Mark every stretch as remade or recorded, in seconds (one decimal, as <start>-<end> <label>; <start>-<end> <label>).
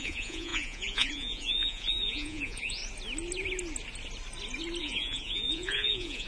0.0-2.8 remade; 2.8-4.8 recorded; 4.8-6.3 remade